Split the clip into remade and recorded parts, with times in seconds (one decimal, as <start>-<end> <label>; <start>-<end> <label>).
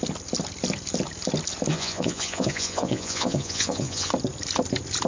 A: 0.0-1.7 recorded; 1.7-4.1 remade; 4.1-5.1 recorded